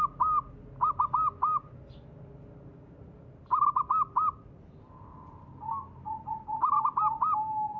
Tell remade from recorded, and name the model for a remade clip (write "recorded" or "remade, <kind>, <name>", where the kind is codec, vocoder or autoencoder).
recorded